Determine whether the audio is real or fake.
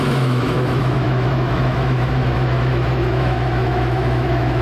fake